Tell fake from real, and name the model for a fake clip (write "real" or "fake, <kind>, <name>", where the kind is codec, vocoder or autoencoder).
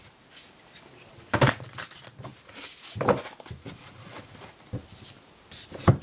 real